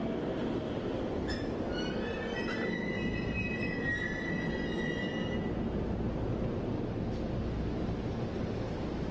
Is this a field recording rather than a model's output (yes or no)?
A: yes